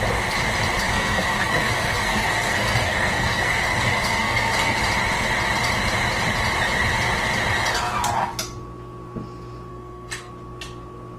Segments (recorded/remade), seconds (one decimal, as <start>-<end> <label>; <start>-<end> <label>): 0.0-0.9 recorded; 0.9-4.8 remade; 4.8-9.7 recorded; 9.7-10.3 remade; 10.3-11.2 recorded